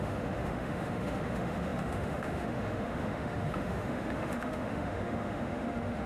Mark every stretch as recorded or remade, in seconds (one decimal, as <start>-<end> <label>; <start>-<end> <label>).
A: 0.0-6.1 remade